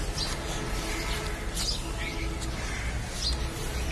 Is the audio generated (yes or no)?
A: no